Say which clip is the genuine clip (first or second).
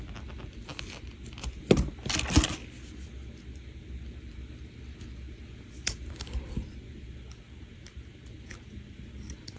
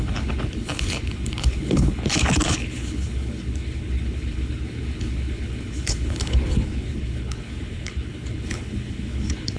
first